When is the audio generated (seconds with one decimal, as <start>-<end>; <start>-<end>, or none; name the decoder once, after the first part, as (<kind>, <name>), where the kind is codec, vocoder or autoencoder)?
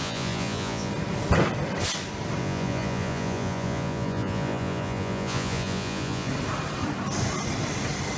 0.0-0.9 (vocoder, Vocos); 2.4-6.3